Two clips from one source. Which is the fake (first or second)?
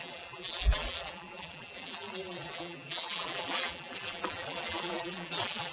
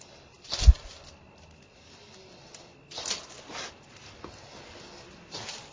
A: first